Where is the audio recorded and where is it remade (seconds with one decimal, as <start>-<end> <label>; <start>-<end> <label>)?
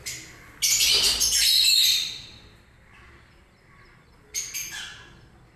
0.0-1.4 recorded; 1.4-4.5 remade; 4.5-5.6 recorded